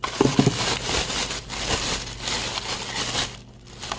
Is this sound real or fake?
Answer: real